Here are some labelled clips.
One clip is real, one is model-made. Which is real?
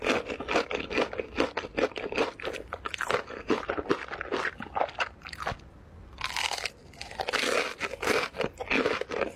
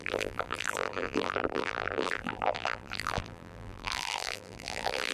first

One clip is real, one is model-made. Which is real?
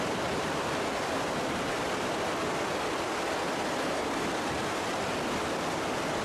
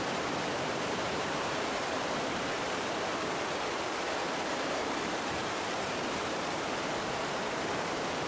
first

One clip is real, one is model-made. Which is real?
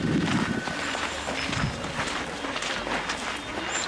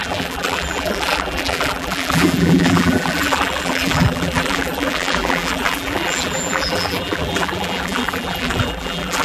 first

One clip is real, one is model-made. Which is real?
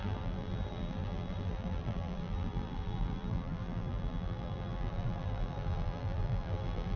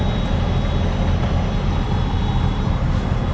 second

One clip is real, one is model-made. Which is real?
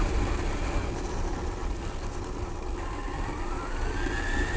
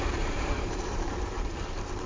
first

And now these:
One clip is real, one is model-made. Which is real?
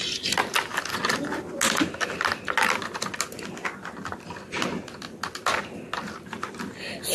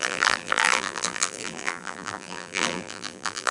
first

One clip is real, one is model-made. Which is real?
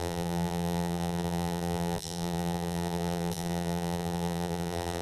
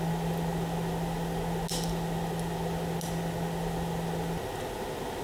second